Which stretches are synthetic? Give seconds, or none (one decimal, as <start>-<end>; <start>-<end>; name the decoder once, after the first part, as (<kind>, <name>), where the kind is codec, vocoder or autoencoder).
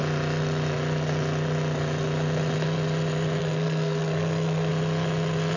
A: 3.4-4.7 (codec, SNAC)